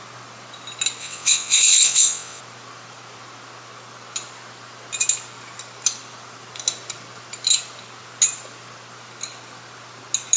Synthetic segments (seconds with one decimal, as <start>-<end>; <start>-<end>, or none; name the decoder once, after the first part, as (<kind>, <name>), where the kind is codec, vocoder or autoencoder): 1.0-2.4 (vocoder, WaveNeXt)